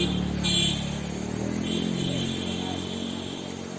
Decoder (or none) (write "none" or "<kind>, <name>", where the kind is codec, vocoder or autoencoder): none